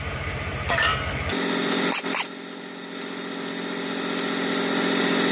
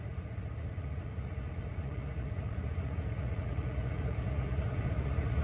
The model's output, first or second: second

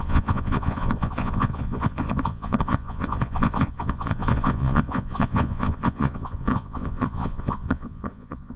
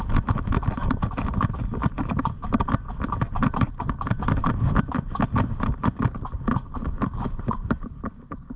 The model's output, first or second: first